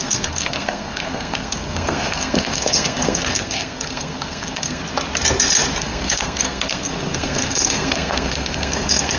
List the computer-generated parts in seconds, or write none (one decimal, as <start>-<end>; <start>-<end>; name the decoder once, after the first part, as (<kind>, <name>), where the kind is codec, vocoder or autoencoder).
0.0-4.8 (codec, SNAC); 5.8-9.2